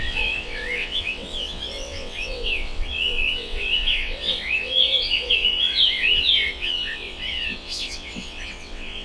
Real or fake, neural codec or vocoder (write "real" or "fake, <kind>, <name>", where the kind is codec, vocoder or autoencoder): fake, vocoder, WaveNeXt